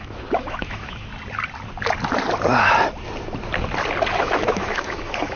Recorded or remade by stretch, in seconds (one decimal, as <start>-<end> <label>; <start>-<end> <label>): 0.0-1.1 remade; 1.1-4.2 recorded; 4.2-5.4 remade